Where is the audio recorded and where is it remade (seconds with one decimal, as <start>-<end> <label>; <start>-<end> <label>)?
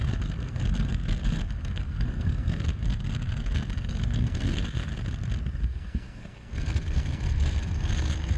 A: 0.0-4.9 remade; 4.9-5.6 recorded; 5.6-8.4 remade